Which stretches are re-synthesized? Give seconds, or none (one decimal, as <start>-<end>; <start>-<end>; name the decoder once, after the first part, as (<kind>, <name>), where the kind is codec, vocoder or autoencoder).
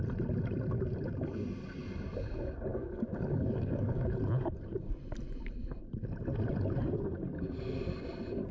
2.7-4.1 (codec, DAC)